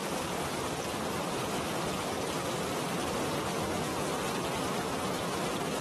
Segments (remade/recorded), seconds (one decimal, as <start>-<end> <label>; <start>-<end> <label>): 0.0-5.8 recorded